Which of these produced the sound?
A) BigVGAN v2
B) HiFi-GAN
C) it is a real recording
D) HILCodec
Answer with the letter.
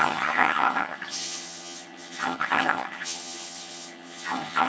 B